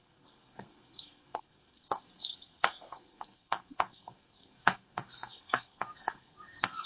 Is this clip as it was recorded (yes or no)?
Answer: no